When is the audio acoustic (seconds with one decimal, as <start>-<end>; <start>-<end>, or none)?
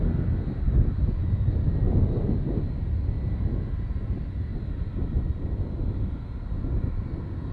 0.0-1.2; 2.5-4.5; 6.3-7.5